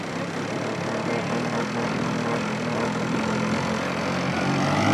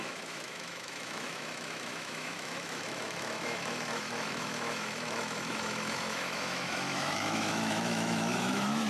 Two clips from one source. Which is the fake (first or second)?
second